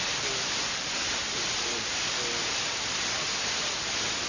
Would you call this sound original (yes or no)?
yes